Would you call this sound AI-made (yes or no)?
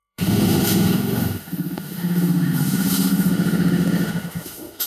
yes